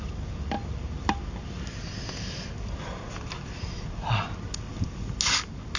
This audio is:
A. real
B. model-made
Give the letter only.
A